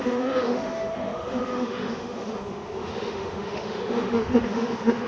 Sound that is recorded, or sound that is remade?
remade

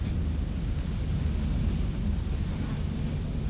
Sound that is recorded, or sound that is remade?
recorded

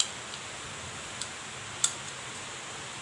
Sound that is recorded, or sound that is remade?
recorded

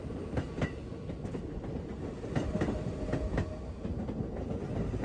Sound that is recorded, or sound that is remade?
recorded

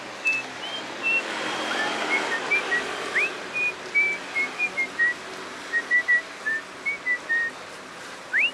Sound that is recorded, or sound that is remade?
recorded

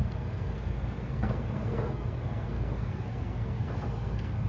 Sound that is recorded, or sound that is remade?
remade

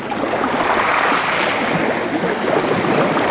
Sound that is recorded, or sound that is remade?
recorded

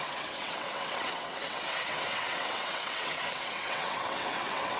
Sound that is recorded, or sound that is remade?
remade